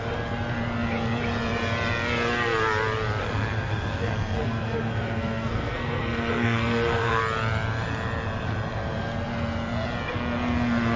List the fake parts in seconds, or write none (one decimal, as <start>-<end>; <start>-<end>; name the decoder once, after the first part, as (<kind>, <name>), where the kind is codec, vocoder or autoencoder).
3.2-7.2 (codec, SNAC)